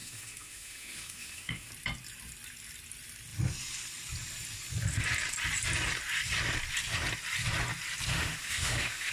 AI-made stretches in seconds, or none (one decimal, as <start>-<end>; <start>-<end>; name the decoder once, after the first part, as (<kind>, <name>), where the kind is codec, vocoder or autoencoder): 0.0-1.7 (autoencoder, DAC-VAE); 8.1-9.1

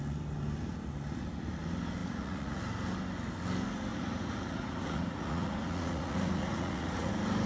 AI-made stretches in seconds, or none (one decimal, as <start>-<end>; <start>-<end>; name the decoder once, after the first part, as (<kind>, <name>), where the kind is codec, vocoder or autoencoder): 2.0-2.6 (vocoder, Vocos); 3.9-7.1

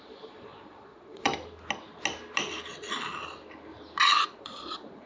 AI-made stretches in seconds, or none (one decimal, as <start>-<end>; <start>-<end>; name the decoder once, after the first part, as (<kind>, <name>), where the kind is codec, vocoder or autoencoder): 0.0-1.3 (vocoder, Vocos); 4.4-5.1

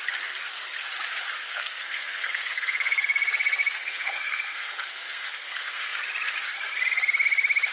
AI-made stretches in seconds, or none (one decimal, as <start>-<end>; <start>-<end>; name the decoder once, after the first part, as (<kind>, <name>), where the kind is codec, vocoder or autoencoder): 1.4-6.0 (codec, SNAC)

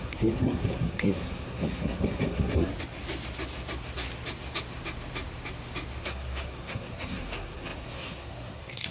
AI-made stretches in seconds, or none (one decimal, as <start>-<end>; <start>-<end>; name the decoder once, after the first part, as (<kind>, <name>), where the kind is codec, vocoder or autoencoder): 0.0-2.7 (codec, SNAC); 6.0-8.9

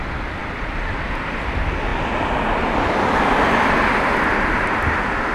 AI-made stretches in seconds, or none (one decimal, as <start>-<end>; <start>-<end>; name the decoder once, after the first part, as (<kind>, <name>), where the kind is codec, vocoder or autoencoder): none

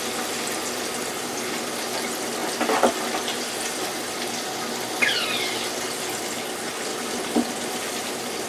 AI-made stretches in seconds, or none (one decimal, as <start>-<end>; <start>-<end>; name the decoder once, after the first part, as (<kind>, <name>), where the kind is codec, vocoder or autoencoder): none

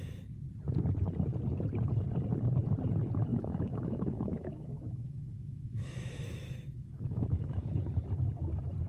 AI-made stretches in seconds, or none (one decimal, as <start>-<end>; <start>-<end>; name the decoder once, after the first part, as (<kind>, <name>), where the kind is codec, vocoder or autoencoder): 3.3-7.8 (autoencoder, DAC-VAE)